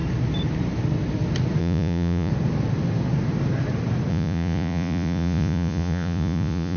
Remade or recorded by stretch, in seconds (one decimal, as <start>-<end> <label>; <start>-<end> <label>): 0.0-1.6 recorded; 1.6-2.3 remade; 2.3-4.1 recorded; 4.1-6.8 remade